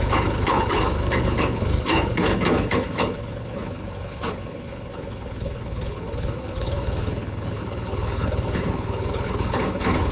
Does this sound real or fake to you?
fake